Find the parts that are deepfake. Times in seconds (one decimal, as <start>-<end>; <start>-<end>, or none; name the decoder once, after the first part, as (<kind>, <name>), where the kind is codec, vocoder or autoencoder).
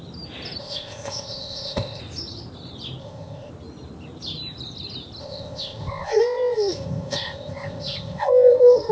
0.6-2.0 (codec, ZipCodec); 3.0-3.5; 5.2-8.9